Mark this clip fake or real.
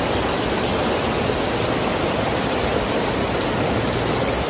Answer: real